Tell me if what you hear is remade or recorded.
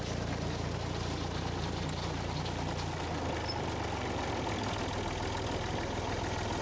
recorded